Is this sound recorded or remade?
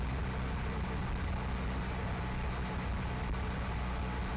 recorded